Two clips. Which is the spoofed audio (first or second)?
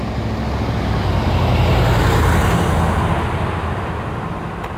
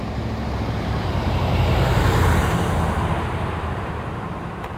second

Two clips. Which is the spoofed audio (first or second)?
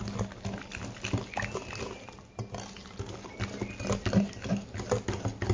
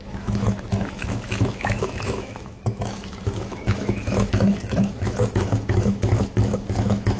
second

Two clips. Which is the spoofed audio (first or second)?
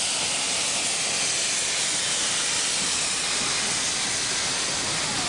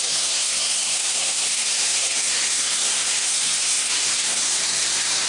second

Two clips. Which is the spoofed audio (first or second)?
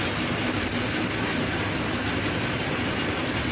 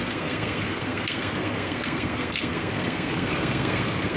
second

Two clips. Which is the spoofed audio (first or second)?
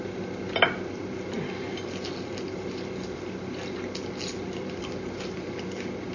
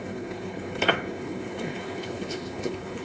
second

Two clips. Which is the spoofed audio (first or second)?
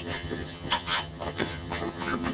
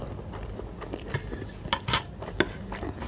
first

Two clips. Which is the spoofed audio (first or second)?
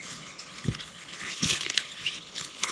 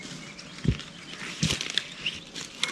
first